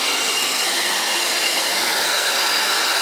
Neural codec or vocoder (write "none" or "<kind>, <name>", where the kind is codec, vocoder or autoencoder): codec, SNAC